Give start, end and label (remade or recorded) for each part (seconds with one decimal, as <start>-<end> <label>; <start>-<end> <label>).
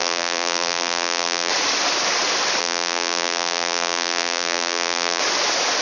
0.0-1.5 remade; 1.5-2.6 recorded; 2.6-5.2 remade; 5.2-5.8 recorded